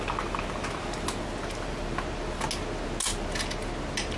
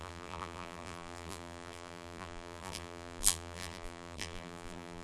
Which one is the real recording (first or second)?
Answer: first